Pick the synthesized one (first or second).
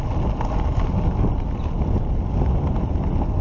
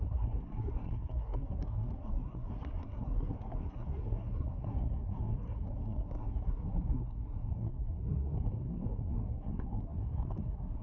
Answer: second